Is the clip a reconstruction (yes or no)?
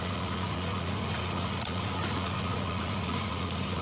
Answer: yes